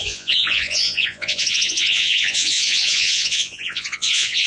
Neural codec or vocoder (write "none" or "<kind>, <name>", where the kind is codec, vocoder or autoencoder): vocoder, Vocos